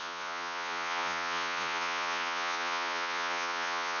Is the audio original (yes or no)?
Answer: no